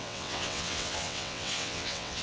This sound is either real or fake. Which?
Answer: fake